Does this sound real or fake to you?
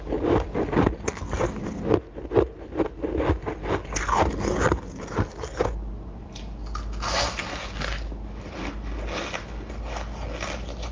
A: real